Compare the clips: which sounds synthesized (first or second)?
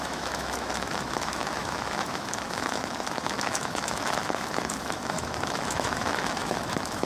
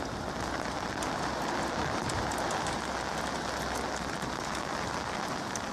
first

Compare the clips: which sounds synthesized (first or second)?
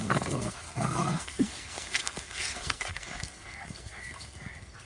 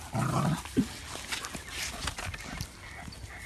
first